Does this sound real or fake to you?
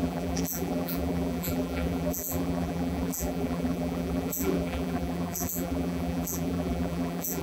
fake